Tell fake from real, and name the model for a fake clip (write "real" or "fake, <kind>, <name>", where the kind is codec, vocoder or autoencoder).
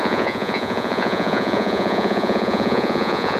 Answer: fake, vocoder, Vocos